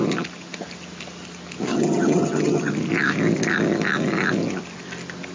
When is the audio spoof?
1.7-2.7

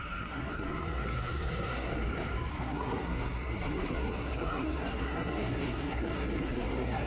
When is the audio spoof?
0.0-1.9; 2.5-7.1

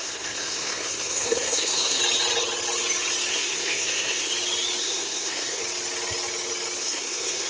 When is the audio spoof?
0.0-2.0; 3.3-4.3; 4.8-5.6; 6.8-7.5

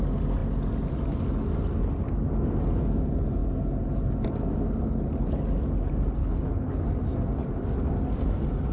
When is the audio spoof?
6.2-6.8

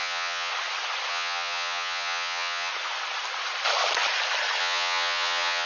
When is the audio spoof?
0.0-0.5; 1.1-2.7; 4.6-5.7

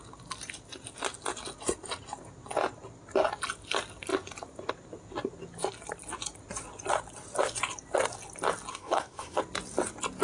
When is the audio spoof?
8.7-9.4

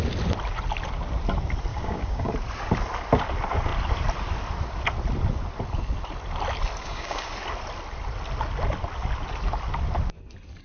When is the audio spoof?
1.7-2.3; 6.8-7.3